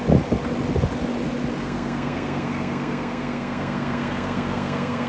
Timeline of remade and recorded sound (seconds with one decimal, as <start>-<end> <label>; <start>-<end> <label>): 0.0-1.6 recorded; 1.6-5.1 remade